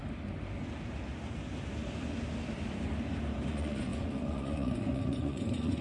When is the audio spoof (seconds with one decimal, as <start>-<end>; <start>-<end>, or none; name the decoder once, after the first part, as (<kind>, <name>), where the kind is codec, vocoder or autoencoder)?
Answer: 3.5-5.8 (vocoder, Vocos)